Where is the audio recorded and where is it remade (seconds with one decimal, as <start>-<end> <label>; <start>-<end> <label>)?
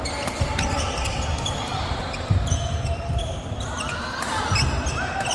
0.0-1.7 recorded; 1.7-3.8 remade; 3.8-5.3 recorded